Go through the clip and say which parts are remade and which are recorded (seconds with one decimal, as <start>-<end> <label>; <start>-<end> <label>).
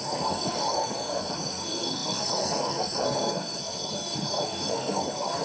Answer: 0.0-5.4 remade